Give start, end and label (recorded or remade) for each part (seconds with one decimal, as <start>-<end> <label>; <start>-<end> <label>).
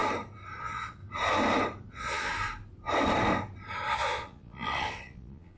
0.0-0.6 recorded; 0.6-1.0 remade; 1.0-1.9 recorded; 1.9-2.3 remade; 2.3-3.9 recorded; 3.9-5.6 remade